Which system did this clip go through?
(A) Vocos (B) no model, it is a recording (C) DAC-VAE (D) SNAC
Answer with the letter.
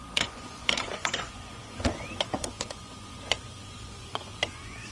A